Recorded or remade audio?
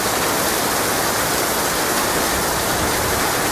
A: recorded